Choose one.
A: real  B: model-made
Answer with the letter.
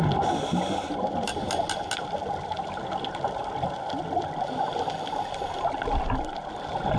A